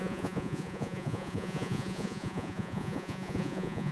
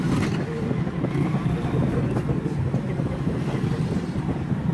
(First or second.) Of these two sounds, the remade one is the first